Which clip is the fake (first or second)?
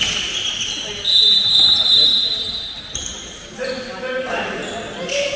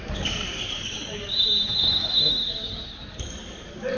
second